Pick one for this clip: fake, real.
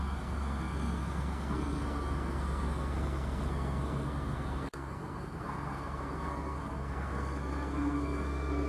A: fake